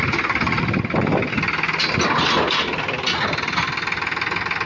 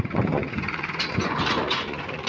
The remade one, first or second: second